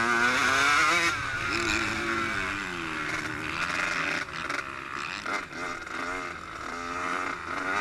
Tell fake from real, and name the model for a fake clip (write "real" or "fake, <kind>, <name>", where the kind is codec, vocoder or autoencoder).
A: real